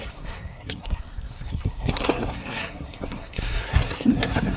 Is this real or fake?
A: fake